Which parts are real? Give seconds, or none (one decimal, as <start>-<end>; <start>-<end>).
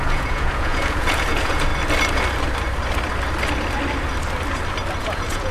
1.7-5.0